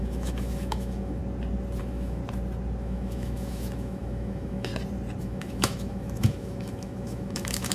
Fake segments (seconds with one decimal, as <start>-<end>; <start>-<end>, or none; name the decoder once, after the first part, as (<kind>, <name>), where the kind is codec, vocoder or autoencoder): 0.0-1.2 (autoencoder, DAC-VAE); 1.8-2.2; 2.8-4.7; 5.2-7.7